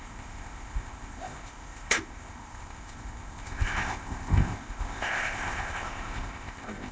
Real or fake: fake